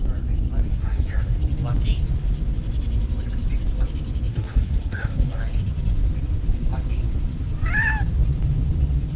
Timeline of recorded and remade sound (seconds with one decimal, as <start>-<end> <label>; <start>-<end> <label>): 0.0-0.7 recorded; 0.7-1.4 remade; 1.4-4.3 recorded; 4.3-5.4 remade; 5.4-9.2 recorded